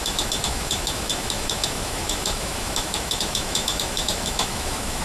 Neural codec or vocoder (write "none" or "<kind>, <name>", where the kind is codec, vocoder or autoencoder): autoencoder, DAC-VAE